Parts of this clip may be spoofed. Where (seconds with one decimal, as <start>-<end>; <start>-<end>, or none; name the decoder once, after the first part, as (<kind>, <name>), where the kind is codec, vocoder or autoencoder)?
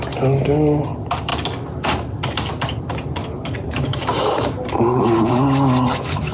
3.2-5.0 (vocoder, BigVGAN v2)